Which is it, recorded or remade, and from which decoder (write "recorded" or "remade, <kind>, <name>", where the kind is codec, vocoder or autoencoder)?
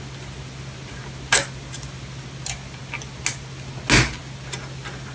recorded